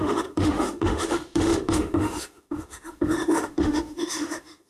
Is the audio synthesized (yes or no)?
yes